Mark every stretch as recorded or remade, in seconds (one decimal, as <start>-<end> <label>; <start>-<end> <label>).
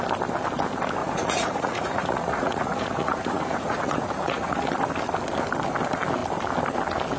0.0-1.0 recorded; 1.0-4.7 remade; 4.7-7.2 recorded